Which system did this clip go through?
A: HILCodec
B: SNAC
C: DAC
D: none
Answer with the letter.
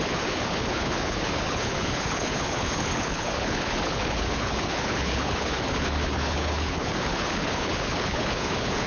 A